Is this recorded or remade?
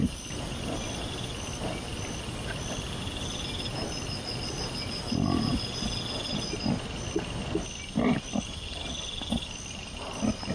recorded